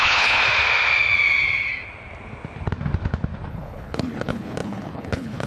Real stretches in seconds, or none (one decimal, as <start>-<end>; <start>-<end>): 0.4-3.5